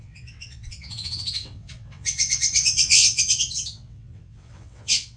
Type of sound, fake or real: fake